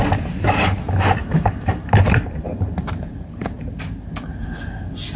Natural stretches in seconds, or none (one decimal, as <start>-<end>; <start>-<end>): 0.0-1.2; 4.1-5.2